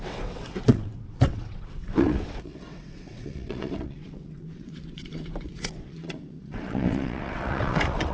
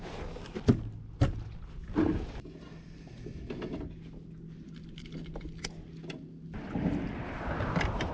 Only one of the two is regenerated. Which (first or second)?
first